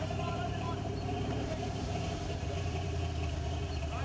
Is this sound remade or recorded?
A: remade